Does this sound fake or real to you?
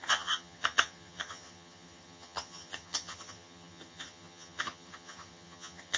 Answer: fake